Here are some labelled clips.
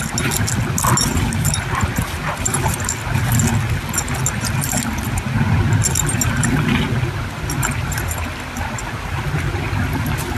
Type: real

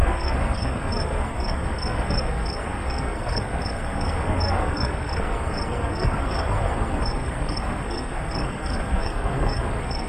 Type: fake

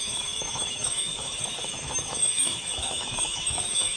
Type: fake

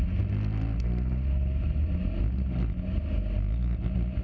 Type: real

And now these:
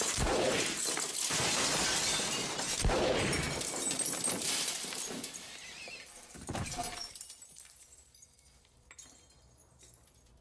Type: fake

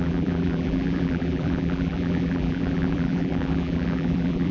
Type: fake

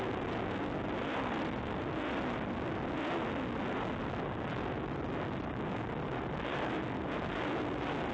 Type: real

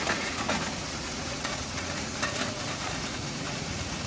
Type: fake